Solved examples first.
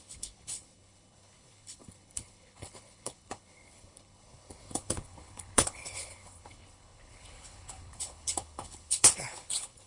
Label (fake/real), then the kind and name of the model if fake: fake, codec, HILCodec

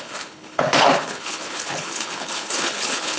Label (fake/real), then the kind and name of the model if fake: fake, codec, HILCodec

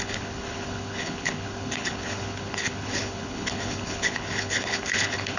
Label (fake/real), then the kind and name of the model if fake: fake, codec, HILCodec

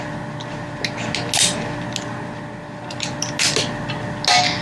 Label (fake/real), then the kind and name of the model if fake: real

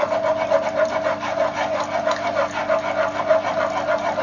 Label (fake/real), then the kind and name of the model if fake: real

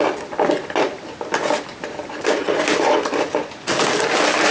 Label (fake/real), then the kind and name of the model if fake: real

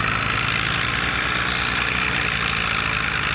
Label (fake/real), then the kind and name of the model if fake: real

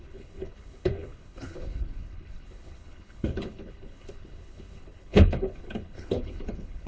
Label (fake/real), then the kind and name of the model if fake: fake, codec, HILCodec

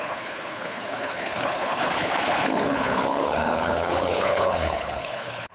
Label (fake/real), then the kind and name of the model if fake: fake, codec, HILCodec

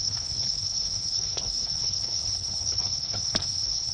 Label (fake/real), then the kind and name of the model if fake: fake, codec, HILCodec